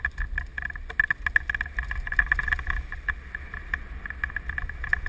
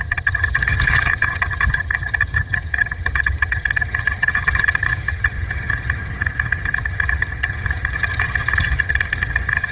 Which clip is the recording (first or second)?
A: first